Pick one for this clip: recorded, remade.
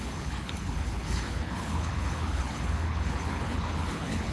remade